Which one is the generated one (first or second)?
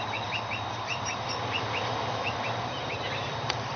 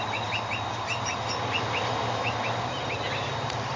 first